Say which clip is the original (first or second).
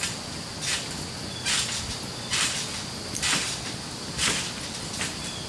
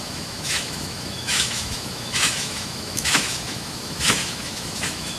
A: first